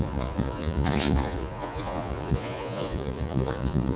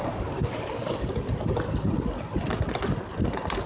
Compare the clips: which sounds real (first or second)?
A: second